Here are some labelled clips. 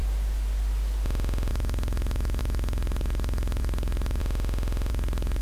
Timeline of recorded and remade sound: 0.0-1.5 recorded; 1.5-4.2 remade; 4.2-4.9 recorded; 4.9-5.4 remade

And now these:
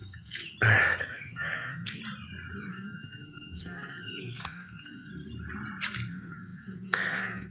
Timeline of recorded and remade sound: 0.0-0.4 remade; 0.4-1.0 recorded; 1.0-2.0 remade; 2.0-2.7 recorded; 2.7-5.1 remade; 5.1-6.1 recorded; 6.1-7.5 remade